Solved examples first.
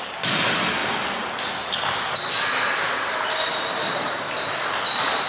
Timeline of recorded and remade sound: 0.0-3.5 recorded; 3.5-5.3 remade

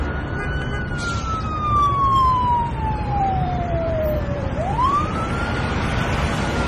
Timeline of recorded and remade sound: 0.0-2.1 recorded; 2.1-6.0 remade; 6.0-6.7 recorded

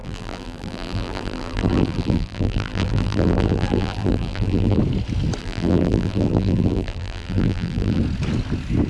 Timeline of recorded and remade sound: 0.0-4.8 remade; 4.8-5.4 recorded; 5.4-8.0 remade; 8.0-8.9 recorded

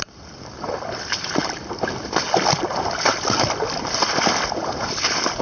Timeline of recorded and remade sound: 0.0-5.4 recorded

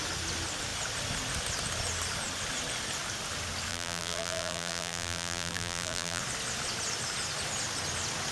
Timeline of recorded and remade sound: 0.0-3.7 recorded; 3.7-6.2 remade; 6.2-8.3 recorded

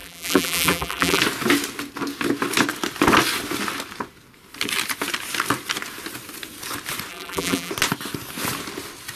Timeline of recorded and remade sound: 0.0-1.2 remade; 1.2-7.1 recorded; 7.1-7.7 remade; 7.7-9.2 recorded

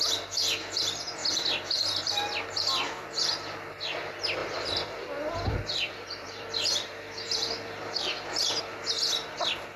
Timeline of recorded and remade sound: 0.0-4.4 recorded; 4.4-8.6 remade; 8.6-9.8 recorded